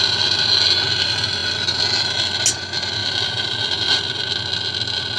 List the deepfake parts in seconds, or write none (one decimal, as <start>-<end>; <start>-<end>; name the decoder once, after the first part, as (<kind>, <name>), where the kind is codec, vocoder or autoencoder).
3.0-4.1 (vocoder, BigVGAN v2)